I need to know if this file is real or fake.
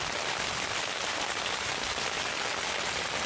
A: real